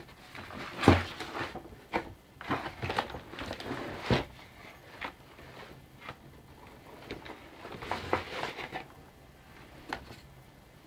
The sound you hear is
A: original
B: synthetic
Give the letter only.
A